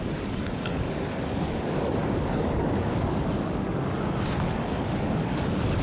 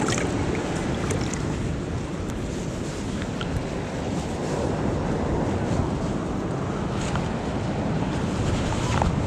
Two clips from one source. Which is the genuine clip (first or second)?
second